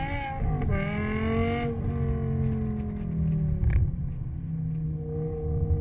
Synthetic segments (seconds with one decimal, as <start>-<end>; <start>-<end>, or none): none

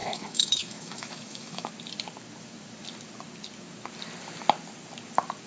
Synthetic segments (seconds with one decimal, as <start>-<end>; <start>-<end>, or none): 0.0-1.7

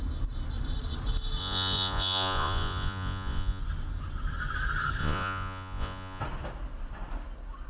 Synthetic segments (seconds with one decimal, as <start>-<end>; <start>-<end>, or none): 1.4-3.6; 5.0-6.2

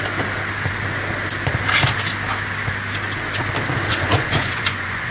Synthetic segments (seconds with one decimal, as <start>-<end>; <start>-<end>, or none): 3.9-5.1

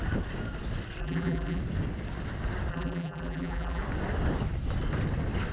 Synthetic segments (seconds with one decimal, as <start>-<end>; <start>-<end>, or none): 1.0-1.6; 2.7-3.8

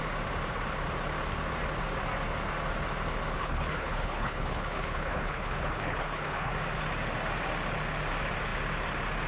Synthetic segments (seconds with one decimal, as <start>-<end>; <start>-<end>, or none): 3.4-6.5